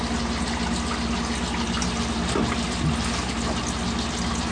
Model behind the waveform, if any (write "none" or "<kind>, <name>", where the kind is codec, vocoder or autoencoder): none